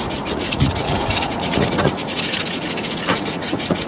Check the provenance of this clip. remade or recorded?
remade